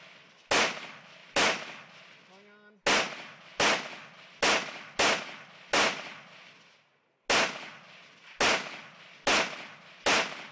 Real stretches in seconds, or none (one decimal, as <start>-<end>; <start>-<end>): 0.0-10.5